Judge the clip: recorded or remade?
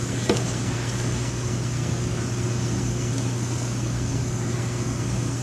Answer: remade